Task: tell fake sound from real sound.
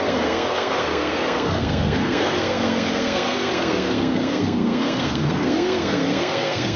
fake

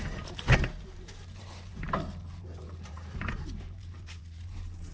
fake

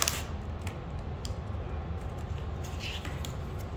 real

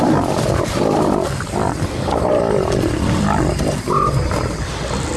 real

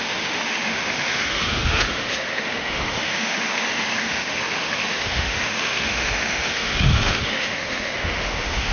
fake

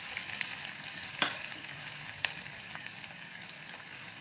fake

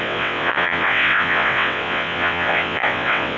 fake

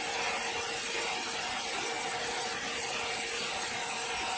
real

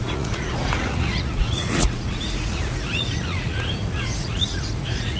fake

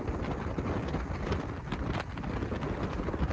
real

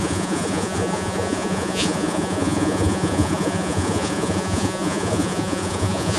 fake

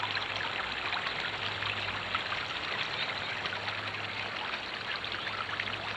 real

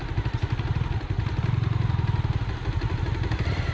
real